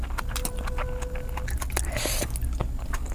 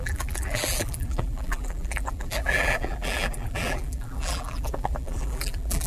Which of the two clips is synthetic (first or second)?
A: second